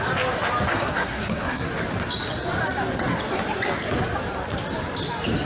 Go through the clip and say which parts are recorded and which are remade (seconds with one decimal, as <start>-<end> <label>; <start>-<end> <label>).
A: 0.0-0.7 recorded; 0.7-1.7 remade; 1.7-5.5 recorded